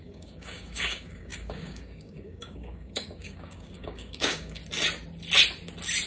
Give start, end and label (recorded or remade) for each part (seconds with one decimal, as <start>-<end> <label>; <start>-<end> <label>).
0.0-4.6 remade; 4.6-6.1 recorded